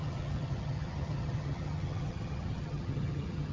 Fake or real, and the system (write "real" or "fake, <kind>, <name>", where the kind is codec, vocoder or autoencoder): fake, vocoder, HiFi-GAN